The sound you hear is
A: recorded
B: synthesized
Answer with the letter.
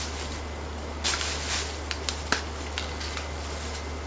A